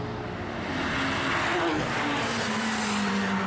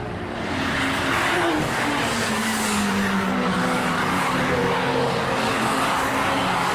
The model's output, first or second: second